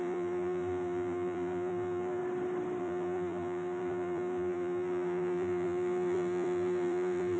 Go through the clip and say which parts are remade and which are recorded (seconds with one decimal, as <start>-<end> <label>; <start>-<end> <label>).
0.0-2.2 remade; 2.2-2.8 recorded; 2.8-7.4 remade